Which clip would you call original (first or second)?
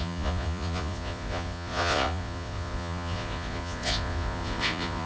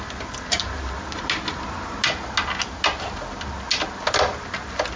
second